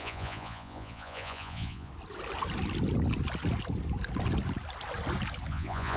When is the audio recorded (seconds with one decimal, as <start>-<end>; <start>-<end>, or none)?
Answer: 1.9-5.5